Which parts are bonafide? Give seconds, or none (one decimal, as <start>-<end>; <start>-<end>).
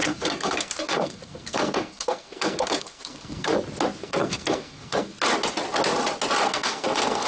3.5-4.0; 5.1-6.4